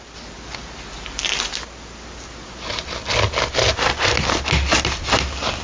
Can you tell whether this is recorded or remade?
recorded